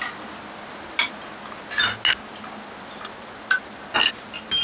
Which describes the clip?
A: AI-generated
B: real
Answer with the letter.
B